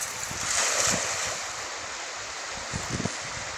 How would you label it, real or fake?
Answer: real